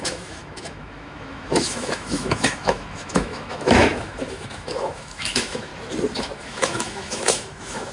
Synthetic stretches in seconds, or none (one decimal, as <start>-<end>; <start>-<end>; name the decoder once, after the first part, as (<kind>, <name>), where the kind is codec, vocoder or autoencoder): 0.0-5.7 (autoencoder, DAC-VAE); 6.2-7.9